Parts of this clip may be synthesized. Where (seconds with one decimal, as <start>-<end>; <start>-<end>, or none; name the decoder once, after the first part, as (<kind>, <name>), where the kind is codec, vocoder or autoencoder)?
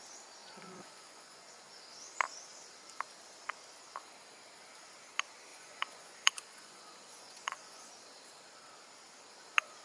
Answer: 0.4-1.8 (vocoder, Vocos); 5.5-7.9